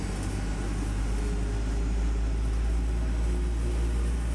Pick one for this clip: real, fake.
real